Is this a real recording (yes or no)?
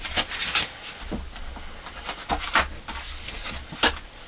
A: yes